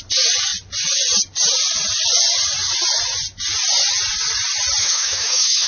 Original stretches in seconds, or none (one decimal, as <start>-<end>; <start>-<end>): 0.0-4.8

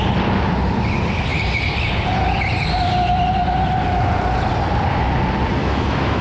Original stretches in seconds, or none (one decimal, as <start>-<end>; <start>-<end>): 0.0-5.6

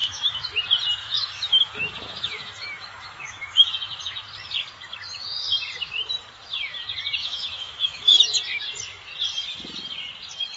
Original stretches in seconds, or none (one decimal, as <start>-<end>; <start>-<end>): 0.6-1.0; 4.0-7.2; 8.2-10.6

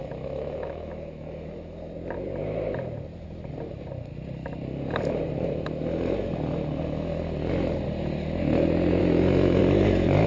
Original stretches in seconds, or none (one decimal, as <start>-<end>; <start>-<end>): 1.9-9.0; 9.6-10.3